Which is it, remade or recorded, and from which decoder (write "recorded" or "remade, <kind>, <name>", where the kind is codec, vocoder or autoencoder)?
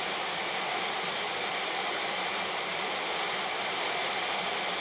recorded